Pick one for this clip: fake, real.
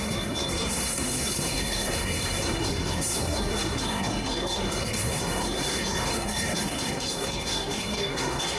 fake